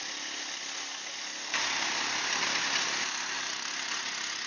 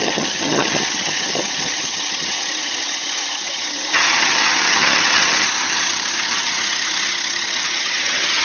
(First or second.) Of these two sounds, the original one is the first